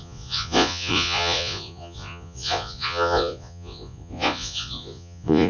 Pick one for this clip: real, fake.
fake